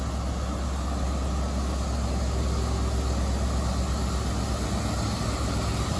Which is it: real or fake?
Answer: real